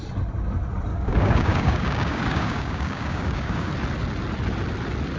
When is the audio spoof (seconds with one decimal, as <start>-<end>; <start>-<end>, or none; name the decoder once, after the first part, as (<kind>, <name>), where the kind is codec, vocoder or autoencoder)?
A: 0.9-3.7 (codec, DAC)